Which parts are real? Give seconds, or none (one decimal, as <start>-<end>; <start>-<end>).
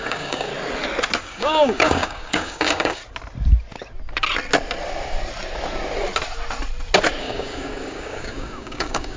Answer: 0.5-1.2; 3.0-7.2